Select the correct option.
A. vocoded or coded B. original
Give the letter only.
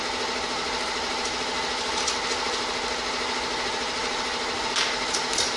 B